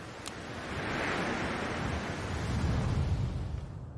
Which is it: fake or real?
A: real